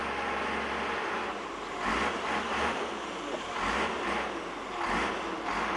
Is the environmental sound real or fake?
real